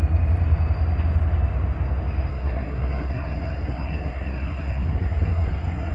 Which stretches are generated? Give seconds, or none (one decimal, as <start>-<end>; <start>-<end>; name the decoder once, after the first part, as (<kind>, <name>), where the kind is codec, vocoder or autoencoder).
2.3-5.9 (codec, SNAC)